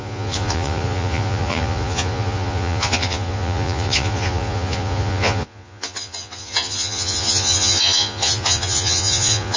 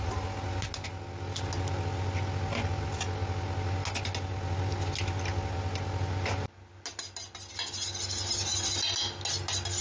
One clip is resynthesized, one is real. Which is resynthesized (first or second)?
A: first